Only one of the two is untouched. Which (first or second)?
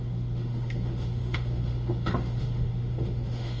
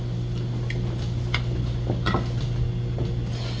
second